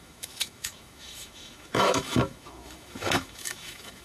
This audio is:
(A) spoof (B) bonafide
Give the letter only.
A